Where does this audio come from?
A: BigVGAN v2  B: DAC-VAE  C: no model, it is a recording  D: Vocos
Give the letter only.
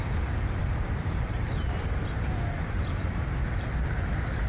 A